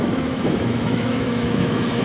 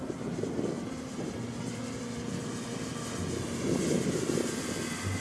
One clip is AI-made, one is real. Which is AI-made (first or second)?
first